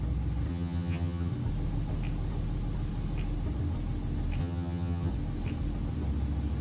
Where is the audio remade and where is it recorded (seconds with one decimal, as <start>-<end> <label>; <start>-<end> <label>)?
0.0-0.5 recorded; 0.5-1.3 remade; 1.3-4.4 recorded; 4.4-5.1 remade; 5.1-6.6 recorded